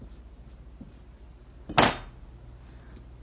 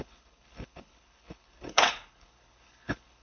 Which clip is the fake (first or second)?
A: second